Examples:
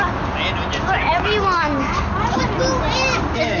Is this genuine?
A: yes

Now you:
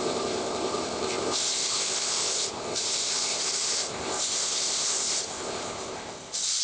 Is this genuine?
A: no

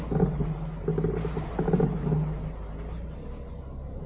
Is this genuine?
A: yes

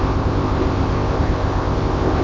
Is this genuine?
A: no